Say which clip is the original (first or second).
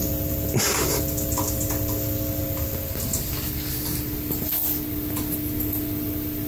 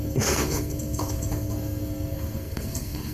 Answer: first